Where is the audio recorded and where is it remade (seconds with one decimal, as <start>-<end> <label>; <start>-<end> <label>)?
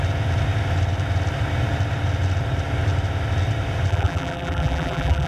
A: 0.0-3.9 recorded; 3.9-5.3 remade